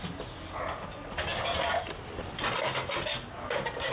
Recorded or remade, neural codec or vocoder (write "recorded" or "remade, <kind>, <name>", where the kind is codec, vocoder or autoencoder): recorded